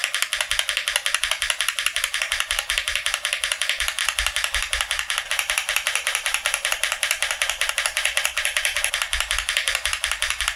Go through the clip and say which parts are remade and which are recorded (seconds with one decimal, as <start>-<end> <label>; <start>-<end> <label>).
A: 0.0-1.2 recorded; 1.2-10.6 remade